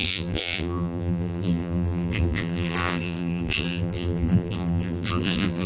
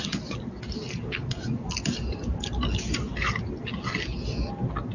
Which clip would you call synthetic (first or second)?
first